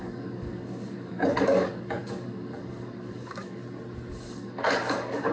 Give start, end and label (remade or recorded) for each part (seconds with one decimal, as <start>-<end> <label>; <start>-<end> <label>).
0.0-3.6 remade; 3.6-4.1 recorded; 4.1-5.3 remade